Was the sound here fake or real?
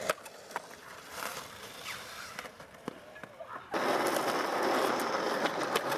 fake